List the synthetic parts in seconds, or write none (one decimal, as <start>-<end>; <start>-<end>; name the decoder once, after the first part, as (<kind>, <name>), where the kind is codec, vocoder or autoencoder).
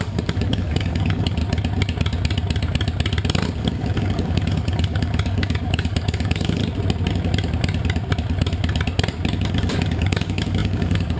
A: 0.0-1.4 (codec, DAC); 3.6-6.6; 9.5-11.2